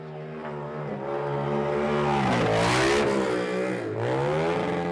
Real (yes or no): yes